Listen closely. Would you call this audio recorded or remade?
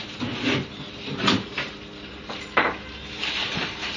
remade